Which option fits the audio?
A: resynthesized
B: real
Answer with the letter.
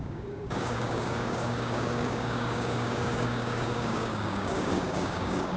A